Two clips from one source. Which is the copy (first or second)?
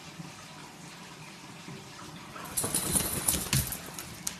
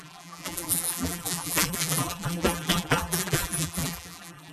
second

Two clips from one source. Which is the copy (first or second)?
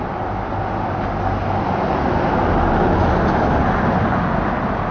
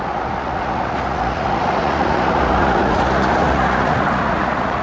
second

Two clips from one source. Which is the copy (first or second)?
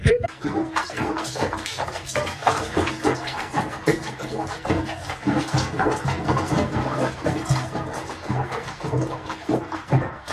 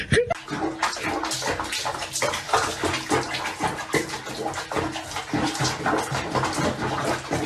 first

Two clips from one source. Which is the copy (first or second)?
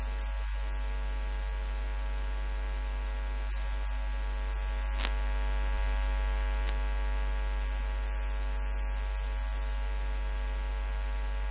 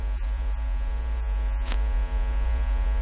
second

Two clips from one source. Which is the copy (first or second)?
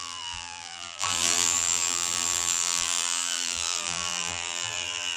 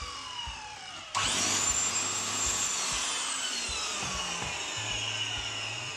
first